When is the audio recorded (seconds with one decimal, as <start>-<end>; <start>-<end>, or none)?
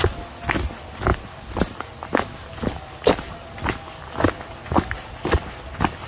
0.0-6.1